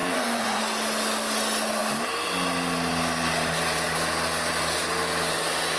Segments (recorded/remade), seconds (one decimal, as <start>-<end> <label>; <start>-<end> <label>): 0.0-0.6 remade; 0.6-5.8 recorded